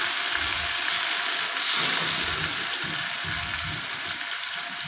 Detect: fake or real real